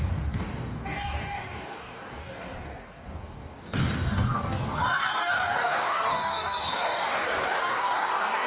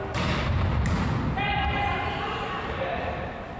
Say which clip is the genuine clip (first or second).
second